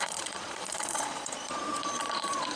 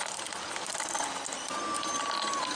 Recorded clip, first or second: second